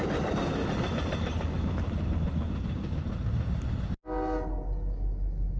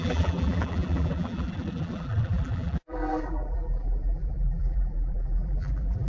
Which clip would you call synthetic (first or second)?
second